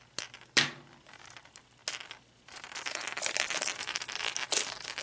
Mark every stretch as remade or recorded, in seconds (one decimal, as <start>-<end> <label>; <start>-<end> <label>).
0.0-5.0 recorded